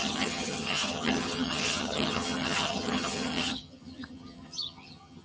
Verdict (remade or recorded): remade